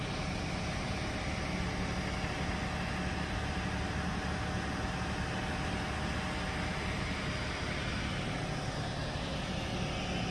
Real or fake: real